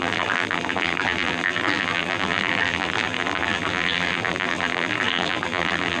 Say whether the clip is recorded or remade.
remade